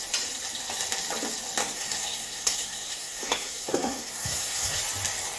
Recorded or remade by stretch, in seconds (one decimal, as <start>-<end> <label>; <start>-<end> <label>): 0.0-1.6 recorded; 1.6-4.8 remade; 4.8-5.4 recorded